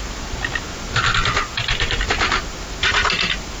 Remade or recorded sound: recorded